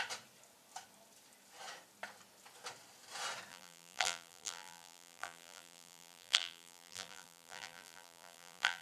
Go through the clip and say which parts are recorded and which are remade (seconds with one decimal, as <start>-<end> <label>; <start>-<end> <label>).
0.0-3.5 recorded; 3.5-8.8 remade

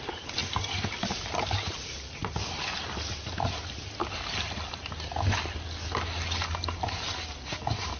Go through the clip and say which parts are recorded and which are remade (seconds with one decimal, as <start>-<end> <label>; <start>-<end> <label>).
0.0-0.4 recorded; 0.4-1.3 remade; 1.3-8.0 recorded

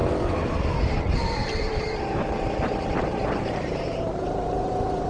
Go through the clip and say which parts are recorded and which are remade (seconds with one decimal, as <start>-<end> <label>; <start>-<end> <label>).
0.0-1.4 recorded; 1.4-4.5 remade; 4.5-5.1 recorded

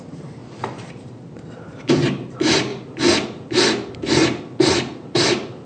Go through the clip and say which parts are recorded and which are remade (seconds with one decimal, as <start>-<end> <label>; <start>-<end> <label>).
0.0-0.4 remade; 0.4-0.9 recorded; 0.9-2.7 remade; 2.7-4.6 recorded; 4.6-5.7 remade

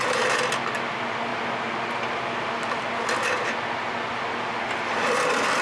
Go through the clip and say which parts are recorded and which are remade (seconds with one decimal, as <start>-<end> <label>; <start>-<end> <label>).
0.0-5.6 remade

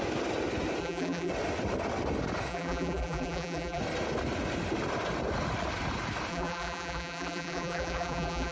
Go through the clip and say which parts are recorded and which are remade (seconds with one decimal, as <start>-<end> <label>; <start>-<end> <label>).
0.0-0.8 recorded; 0.8-1.3 remade; 1.3-2.5 recorded; 2.5-3.8 remade; 3.8-6.3 recorded; 6.3-8.5 remade

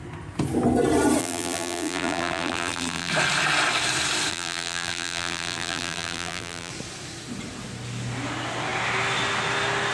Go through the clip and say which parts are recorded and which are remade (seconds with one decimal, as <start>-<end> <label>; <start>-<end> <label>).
0.0-1.2 recorded; 1.2-3.1 remade; 3.1-4.3 recorded; 4.3-6.7 remade; 6.7-9.9 recorded

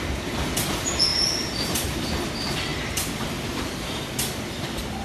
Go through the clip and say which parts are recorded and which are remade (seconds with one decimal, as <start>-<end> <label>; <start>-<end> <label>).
0.0-1.1 recorded; 1.1-2.1 remade; 2.1-2.7 recorded; 2.7-4.1 remade; 4.1-5.0 recorded